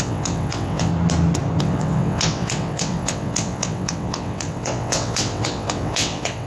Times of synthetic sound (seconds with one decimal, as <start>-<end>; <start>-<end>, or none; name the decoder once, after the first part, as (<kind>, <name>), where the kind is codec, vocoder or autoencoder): 0.0-0.9 (vocoder, WaveNeXt); 1.6-6.5